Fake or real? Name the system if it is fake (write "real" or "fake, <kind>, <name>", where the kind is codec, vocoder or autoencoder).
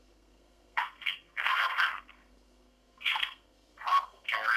fake, codec, SNAC